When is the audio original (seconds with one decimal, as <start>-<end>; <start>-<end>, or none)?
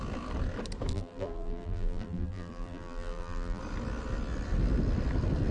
0.0-0.9; 3.6-5.5